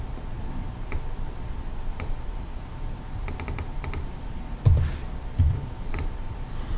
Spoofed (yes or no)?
no